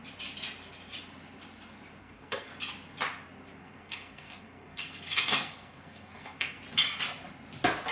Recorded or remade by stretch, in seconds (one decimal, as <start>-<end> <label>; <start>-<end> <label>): 0.0-2.0 recorded; 2.0-2.5 remade; 2.5-3.6 recorded; 3.6-6.6 remade; 6.6-7.9 recorded